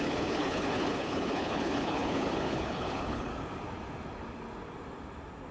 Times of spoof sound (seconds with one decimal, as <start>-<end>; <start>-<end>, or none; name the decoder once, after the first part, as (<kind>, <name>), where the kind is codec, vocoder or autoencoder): 0.0-3.3 (codec, HILCodec)